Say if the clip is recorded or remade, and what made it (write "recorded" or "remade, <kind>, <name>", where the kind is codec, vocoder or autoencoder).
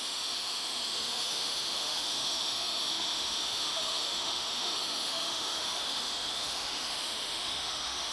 remade, autoencoder, DAC-VAE